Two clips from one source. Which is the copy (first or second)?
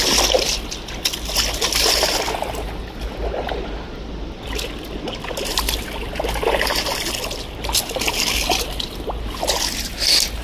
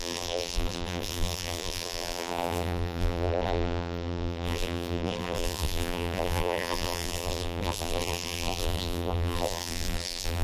second